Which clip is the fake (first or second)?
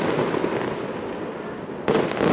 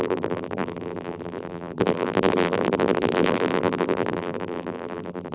second